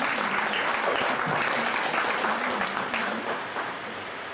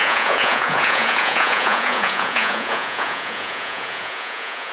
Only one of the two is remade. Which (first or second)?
second